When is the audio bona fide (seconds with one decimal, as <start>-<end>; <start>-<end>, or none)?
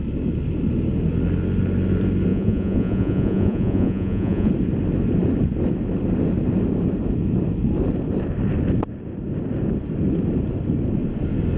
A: 0.0-2.3; 4.5-11.6